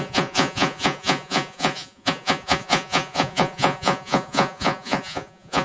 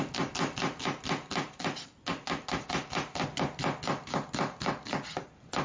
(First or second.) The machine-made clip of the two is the first